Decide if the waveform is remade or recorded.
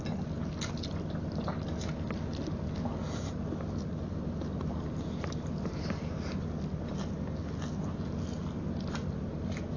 recorded